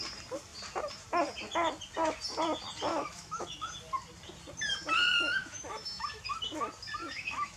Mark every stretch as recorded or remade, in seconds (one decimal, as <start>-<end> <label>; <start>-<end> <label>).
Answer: 0.0-2.9 recorded; 2.9-3.7 remade; 3.7-5.4 recorded; 5.4-6.4 remade; 6.4-7.0 recorded; 7.0-7.6 remade